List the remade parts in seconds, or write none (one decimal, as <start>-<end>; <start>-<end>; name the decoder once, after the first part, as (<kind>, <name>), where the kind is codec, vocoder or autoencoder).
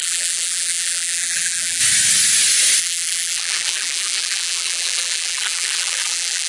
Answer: 0.0-1.8 (vocoder, BigVGAN v2); 2.8-6.5